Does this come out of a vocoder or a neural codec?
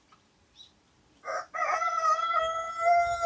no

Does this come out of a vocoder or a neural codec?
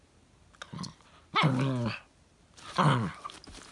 no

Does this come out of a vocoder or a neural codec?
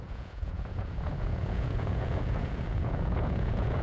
yes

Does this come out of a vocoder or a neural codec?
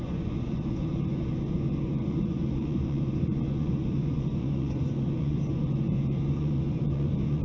yes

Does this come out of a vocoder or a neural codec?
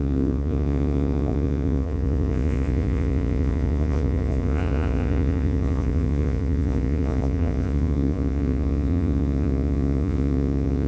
yes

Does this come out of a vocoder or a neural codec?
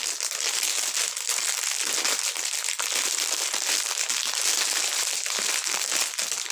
no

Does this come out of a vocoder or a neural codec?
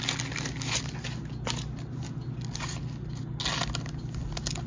no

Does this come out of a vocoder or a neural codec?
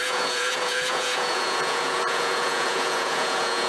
yes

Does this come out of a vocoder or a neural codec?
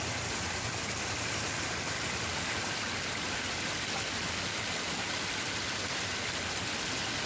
no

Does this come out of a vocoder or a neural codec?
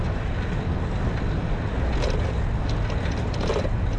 no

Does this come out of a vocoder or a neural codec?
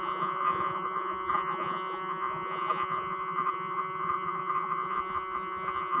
yes